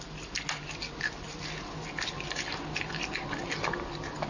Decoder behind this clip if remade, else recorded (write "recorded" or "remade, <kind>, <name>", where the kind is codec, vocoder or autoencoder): recorded